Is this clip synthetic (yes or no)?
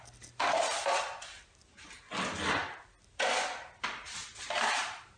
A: no